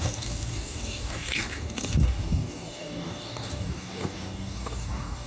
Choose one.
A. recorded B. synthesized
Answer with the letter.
B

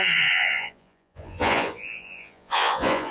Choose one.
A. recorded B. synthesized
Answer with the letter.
B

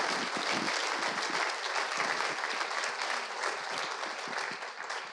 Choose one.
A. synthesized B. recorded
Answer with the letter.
B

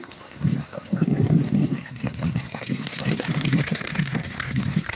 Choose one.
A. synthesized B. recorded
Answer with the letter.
A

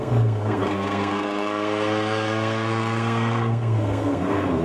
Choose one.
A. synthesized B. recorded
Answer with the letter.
A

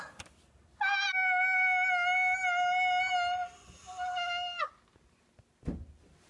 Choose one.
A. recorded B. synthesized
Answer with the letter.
A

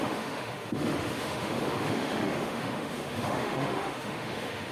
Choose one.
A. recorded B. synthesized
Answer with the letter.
B